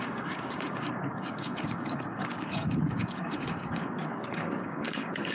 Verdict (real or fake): fake